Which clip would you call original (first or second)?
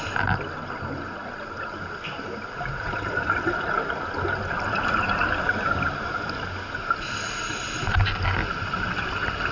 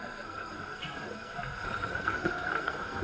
first